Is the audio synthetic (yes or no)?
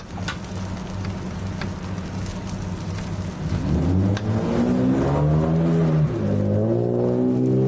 no